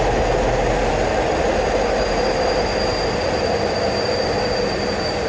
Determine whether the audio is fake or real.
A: real